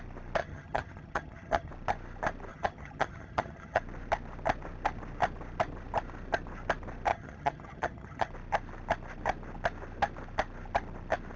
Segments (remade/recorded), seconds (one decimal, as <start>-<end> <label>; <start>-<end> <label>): 0.0-0.4 recorded; 0.4-1.7 remade; 1.7-2.5 recorded; 2.5-3.8 remade; 3.8-7.1 recorded; 7.1-8.3 remade; 8.3-11.4 recorded